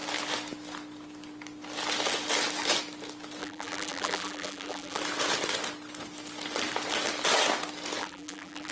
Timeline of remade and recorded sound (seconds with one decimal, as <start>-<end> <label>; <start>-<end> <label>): 0.0-3.4 recorded; 3.4-5.0 remade; 5.0-8.0 recorded; 8.0-8.7 remade